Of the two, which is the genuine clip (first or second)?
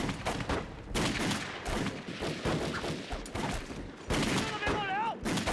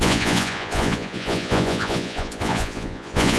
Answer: first